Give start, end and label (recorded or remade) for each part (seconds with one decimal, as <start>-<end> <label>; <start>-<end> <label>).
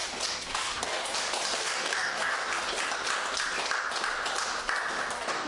0.0-0.5 recorded; 0.5-1.0 remade; 1.0-1.6 recorded; 1.6-2.4 remade; 2.4-5.1 recorded; 5.1-5.5 remade